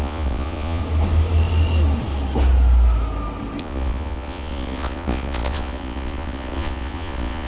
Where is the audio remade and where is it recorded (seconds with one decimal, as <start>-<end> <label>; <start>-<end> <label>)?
0.0-0.8 remade; 0.8-3.6 recorded; 3.6-7.5 remade